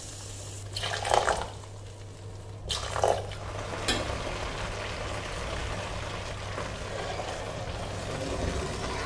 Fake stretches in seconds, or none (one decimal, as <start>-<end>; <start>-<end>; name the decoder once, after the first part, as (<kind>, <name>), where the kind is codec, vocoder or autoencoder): none